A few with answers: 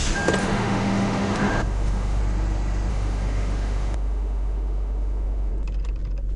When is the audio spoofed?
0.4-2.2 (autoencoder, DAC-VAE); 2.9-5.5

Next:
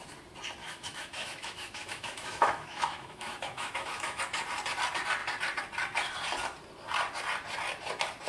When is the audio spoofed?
0.6-4.2 (autoencoder, DAC-VAE)